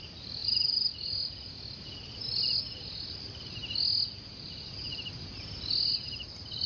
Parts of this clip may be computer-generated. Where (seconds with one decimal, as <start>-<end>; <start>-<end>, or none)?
none